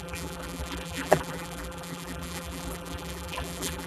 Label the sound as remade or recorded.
remade